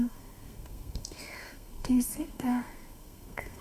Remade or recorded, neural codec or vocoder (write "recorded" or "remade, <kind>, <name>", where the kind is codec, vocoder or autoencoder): remade, codec, SNAC